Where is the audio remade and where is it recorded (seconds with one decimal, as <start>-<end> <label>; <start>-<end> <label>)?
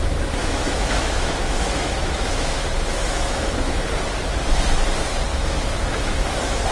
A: 0.0-0.4 recorded; 0.4-3.8 remade; 3.8-5.3 recorded; 5.3-6.7 remade